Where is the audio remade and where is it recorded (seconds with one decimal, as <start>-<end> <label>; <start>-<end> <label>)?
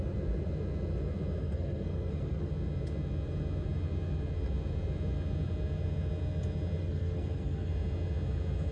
0.0-1.4 recorded; 1.4-2.5 remade; 2.5-6.8 recorded; 6.8-7.7 remade; 7.7-8.7 recorded